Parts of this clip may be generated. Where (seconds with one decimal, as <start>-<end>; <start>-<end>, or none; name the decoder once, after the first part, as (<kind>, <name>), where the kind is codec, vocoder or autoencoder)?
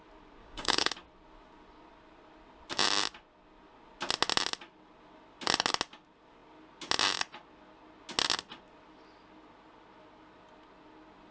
0.4-0.9 (codec, DAC)